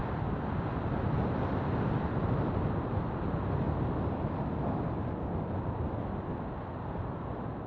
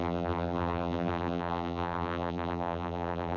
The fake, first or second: second